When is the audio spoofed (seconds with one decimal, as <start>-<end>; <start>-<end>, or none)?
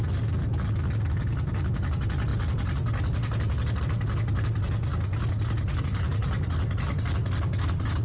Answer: none